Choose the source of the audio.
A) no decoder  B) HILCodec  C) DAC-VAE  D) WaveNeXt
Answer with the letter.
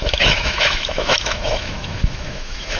C